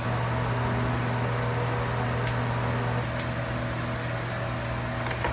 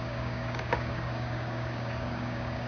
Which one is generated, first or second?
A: second